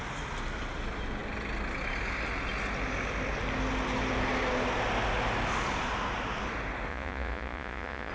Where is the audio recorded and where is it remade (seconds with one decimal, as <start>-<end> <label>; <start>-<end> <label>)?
0.0-6.9 recorded; 6.9-8.1 remade